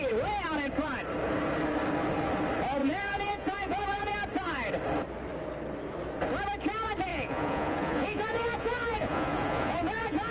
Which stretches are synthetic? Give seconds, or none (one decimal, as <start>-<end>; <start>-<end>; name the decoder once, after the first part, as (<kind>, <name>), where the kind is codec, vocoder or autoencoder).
2.8-4.1 (vocoder, Vocos); 7.1-10.3